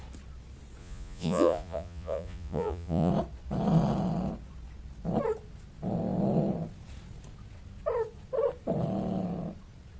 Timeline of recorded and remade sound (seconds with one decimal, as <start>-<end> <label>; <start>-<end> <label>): 0.0-0.8 recorded; 0.8-3.1 remade; 3.1-10.0 recorded